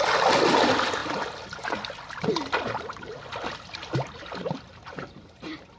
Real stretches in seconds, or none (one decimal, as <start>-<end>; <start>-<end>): 0.0-5.8